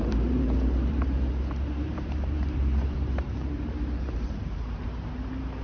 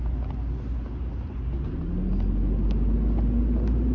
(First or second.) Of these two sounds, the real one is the second